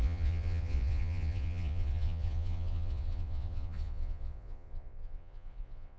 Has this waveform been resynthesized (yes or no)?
yes